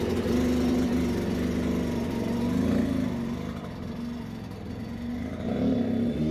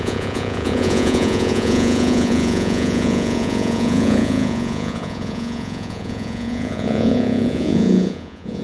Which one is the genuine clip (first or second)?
first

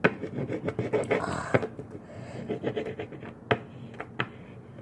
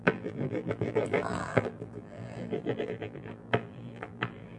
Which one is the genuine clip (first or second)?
first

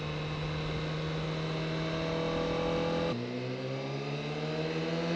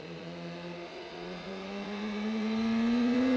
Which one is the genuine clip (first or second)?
first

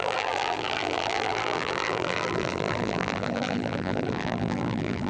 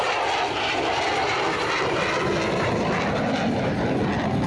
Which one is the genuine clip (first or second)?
second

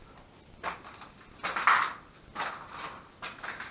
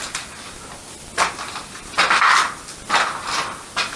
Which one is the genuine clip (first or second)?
second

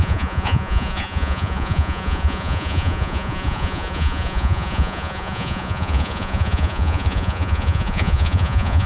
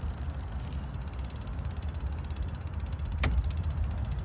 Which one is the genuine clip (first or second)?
second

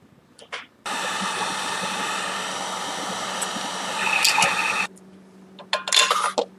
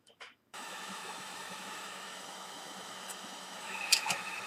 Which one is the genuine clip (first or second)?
first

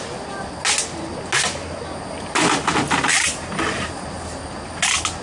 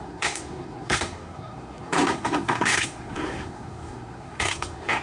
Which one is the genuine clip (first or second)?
first